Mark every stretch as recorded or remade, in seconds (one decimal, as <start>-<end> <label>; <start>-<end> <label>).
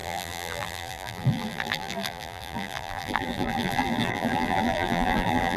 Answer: 0.0-5.6 remade